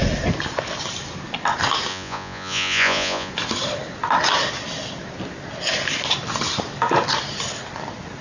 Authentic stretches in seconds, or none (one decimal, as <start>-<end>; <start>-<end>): 0.0-1.9; 3.3-8.2